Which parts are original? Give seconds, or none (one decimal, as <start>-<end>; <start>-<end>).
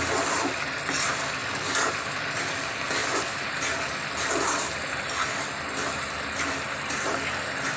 0.0-7.8